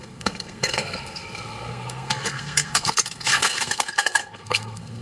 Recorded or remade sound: remade